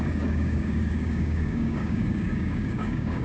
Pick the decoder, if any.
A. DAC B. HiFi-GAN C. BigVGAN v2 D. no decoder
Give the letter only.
A